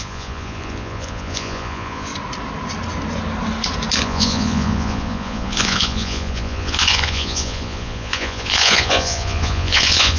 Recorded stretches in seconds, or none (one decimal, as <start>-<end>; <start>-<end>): 2.1-4.0